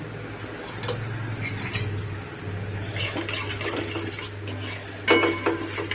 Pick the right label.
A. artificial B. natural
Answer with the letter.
B